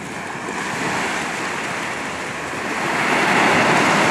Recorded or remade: recorded